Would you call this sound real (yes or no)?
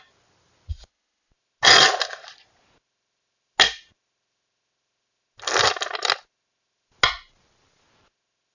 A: yes